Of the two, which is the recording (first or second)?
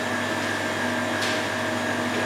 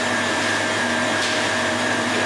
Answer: first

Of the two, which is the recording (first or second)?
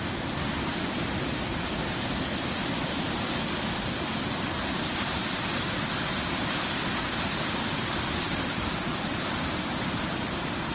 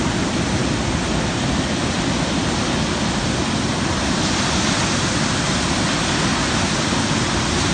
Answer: second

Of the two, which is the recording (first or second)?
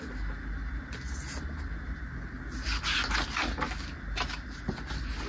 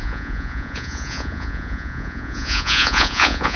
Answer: first